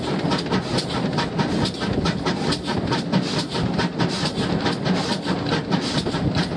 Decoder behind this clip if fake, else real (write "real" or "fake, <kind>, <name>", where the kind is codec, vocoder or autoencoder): real